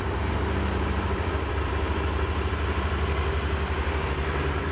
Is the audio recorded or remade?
remade